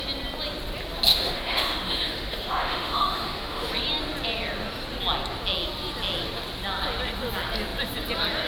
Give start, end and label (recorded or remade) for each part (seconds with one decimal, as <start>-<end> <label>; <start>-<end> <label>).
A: 0.0-1.1 recorded; 1.1-3.7 remade; 3.7-8.5 recorded

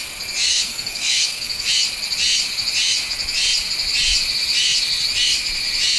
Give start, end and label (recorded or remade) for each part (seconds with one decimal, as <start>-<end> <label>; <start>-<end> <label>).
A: 0.0-0.5 recorded; 0.5-1.7 remade; 1.7-6.0 recorded

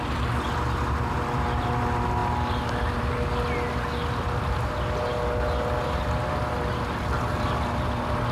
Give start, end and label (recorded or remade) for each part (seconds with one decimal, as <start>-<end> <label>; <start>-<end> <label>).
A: 0.0-8.3 recorded

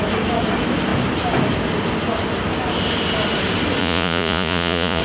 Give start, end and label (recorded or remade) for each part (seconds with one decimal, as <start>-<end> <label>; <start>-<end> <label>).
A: 0.0-3.8 recorded; 3.8-5.0 remade

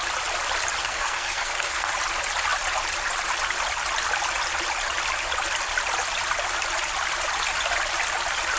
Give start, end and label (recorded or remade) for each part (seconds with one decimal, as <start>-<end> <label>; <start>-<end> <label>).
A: 0.0-0.8 recorded; 0.8-1.9 remade; 1.9-8.6 recorded

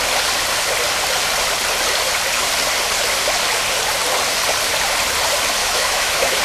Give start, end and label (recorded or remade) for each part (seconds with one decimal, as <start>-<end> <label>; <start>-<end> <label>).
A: 0.0-5.6 recorded; 5.6-6.4 remade

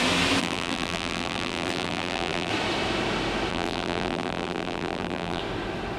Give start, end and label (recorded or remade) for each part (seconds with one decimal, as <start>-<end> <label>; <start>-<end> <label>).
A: 0.0-0.4 recorded; 0.4-2.5 remade; 2.5-3.5 recorded; 3.5-5.4 remade; 5.4-6.0 recorded